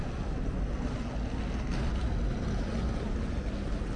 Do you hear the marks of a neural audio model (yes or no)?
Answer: no